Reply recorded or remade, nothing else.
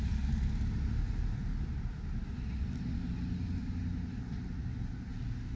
recorded